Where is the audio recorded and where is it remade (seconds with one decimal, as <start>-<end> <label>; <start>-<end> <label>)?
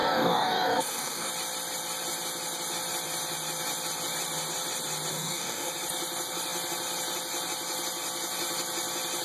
0.0-1.3 remade; 1.3-5.1 recorded; 5.1-5.7 remade; 5.7-9.2 recorded